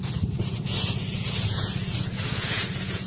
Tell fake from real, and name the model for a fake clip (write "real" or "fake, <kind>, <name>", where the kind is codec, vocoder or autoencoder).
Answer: fake, vocoder, Vocos